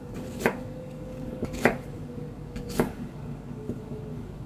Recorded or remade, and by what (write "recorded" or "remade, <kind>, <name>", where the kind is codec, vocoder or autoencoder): remade, codec, DAC